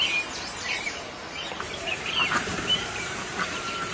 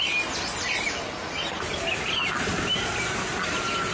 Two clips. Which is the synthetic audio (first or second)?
first